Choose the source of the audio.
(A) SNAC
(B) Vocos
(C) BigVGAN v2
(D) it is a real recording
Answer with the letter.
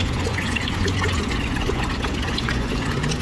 B